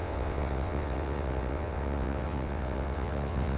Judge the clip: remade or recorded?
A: remade